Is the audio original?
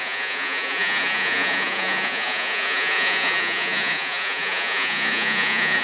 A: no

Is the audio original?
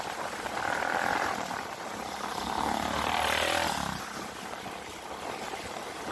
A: no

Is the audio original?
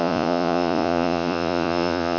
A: no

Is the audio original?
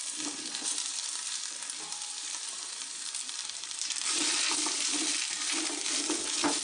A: no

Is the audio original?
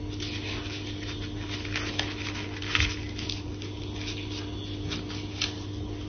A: yes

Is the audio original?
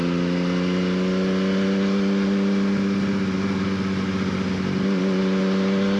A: yes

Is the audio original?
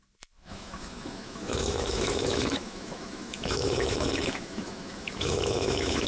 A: no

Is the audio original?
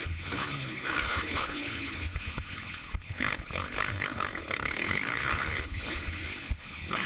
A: no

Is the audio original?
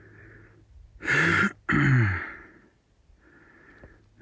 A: yes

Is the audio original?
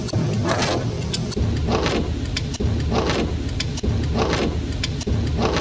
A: yes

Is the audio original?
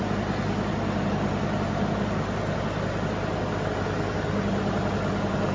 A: yes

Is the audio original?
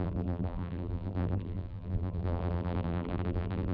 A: no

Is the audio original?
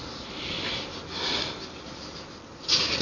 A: yes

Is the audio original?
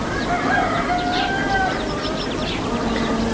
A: yes